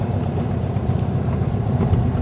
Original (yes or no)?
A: no